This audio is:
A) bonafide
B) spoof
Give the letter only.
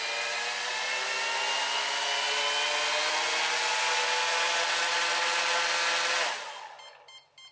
A